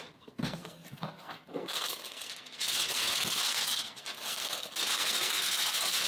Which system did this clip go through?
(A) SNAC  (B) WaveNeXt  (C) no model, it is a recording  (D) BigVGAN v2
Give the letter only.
A